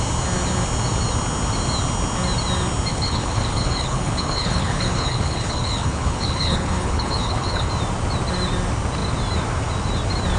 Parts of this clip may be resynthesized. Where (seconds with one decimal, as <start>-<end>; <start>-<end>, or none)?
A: 2.9-7.7